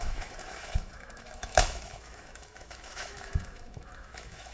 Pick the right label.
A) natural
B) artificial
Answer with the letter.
B